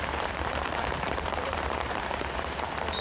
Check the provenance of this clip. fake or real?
fake